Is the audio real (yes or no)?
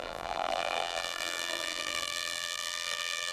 no